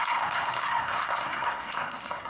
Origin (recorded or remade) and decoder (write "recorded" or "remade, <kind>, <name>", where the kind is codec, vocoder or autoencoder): remade, codec, SNAC